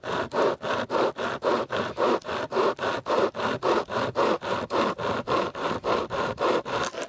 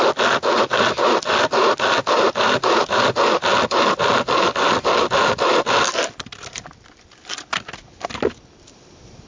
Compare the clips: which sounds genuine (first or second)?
second